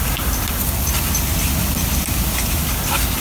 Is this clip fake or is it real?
real